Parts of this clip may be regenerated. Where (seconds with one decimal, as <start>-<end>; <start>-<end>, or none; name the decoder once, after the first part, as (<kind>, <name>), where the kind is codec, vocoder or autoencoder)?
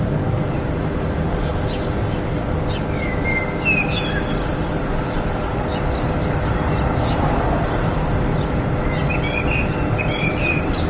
0.0-1.5 (vocoder, BigVGAN v2); 4.5-5.7; 7.4-8.3; 10.0-10.9